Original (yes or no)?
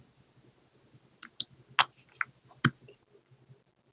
yes